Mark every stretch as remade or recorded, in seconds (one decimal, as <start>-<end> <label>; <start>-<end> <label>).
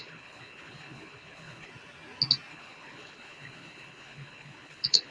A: 0.0-1.7 remade; 1.7-2.5 recorded; 2.5-5.1 remade